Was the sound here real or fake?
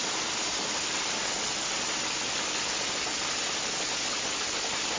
real